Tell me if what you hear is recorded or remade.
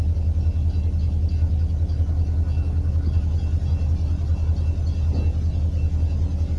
recorded